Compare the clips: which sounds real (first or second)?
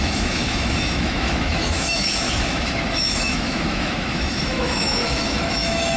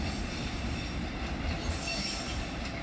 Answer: second